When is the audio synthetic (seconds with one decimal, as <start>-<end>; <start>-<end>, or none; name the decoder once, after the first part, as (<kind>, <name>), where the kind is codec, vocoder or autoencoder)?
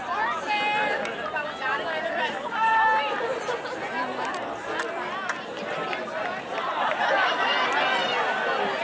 none